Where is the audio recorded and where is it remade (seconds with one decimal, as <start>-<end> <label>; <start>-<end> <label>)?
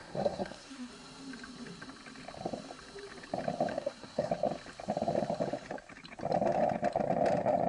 0.0-0.9 remade; 0.9-3.7 recorded; 3.7-4.3 remade; 4.3-7.7 recorded